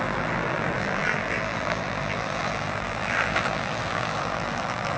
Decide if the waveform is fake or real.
fake